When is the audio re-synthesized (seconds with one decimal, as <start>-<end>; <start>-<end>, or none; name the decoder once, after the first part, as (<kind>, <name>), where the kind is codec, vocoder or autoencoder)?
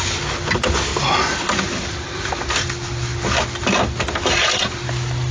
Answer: none